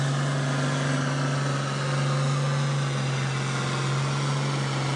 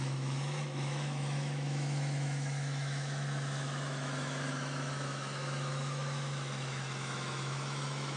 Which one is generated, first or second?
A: second